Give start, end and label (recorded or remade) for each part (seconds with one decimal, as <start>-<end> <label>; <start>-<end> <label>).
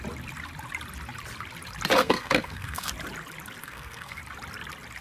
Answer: 0.0-2.0 recorded; 2.0-2.9 remade; 2.9-3.6 recorded; 3.6-4.2 remade; 4.2-5.0 recorded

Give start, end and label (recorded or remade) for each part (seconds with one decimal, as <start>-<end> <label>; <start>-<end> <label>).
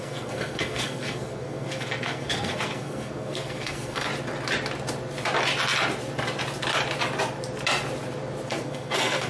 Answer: 0.0-4.1 remade; 4.1-8.5 recorded; 8.5-9.3 remade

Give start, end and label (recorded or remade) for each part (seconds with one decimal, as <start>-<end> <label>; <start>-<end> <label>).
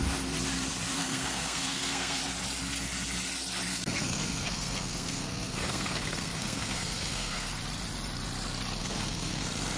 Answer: 0.0-1.0 recorded; 1.0-2.2 remade; 2.2-3.7 recorded; 3.7-7.5 remade; 7.5-8.8 recorded; 8.8-9.4 remade; 9.4-9.8 recorded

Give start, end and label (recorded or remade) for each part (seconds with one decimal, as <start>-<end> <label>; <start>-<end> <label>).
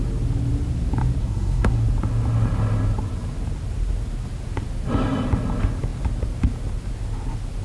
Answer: 0.0-1.2 recorded; 1.2-1.8 remade; 1.8-7.6 recorded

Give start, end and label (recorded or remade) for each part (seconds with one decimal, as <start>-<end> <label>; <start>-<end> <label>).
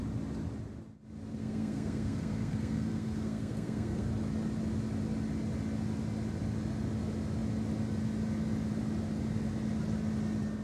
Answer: 0.0-1.3 recorded; 1.3-4.1 remade; 4.1-10.6 recorded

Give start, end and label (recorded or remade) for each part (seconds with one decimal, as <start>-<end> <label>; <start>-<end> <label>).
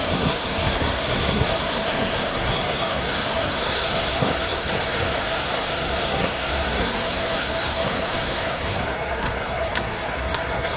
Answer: 0.0-10.8 remade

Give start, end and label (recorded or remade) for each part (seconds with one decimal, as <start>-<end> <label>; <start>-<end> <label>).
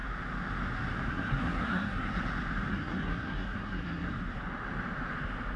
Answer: 0.0-1.1 recorded; 1.1-2.2 remade; 2.2-2.7 recorded; 2.7-4.1 remade; 4.1-5.6 recorded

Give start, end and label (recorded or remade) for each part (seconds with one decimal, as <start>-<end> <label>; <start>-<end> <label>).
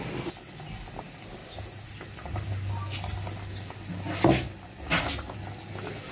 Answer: 0.0-6.1 recorded